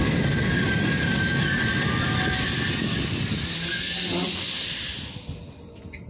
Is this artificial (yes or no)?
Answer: no